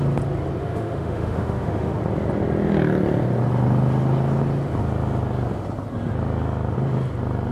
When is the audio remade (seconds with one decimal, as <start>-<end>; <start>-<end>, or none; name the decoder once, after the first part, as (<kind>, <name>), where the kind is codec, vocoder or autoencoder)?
0.6-2.0 (autoencoder, DAC-VAE)